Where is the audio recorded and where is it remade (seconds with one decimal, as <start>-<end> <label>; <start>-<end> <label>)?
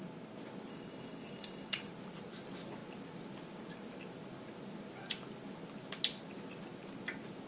0.0-0.7 recorded; 0.7-1.9 remade; 1.9-7.5 recorded